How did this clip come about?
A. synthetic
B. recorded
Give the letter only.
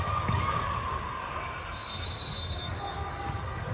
A